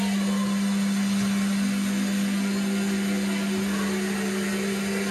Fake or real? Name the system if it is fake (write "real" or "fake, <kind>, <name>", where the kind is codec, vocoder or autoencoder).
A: real